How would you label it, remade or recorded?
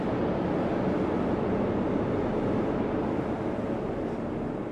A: recorded